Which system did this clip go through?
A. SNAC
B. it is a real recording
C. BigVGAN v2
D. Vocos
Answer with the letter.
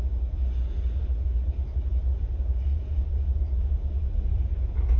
B